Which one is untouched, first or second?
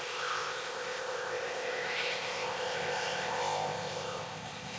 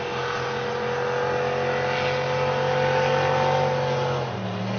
second